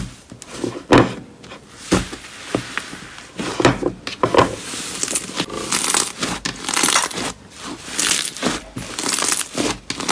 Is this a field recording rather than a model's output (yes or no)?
yes